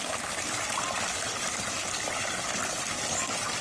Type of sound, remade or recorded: recorded